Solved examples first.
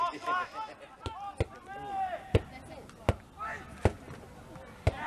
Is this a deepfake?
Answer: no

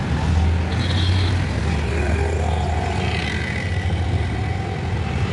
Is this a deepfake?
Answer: no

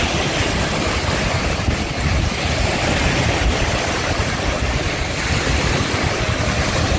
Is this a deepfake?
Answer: no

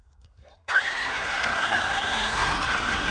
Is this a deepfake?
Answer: yes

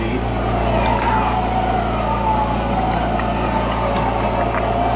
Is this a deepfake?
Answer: no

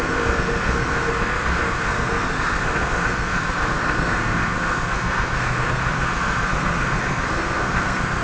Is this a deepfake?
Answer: yes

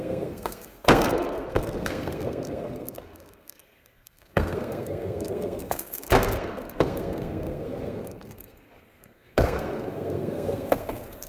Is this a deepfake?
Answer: yes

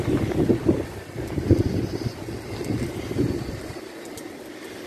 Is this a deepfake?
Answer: no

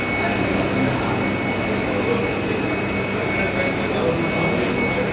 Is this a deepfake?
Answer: no